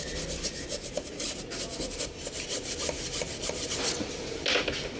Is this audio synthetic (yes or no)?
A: no